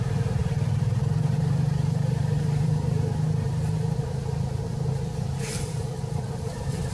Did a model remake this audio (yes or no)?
yes